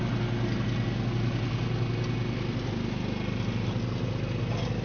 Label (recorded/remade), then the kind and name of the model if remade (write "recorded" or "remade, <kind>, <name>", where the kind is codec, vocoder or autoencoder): recorded